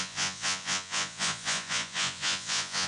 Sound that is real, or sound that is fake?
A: fake